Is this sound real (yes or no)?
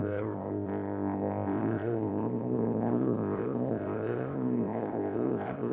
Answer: no